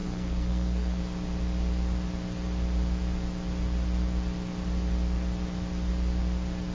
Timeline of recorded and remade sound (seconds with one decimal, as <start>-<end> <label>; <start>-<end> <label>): 0.0-1.0 remade; 1.0-6.7 recorded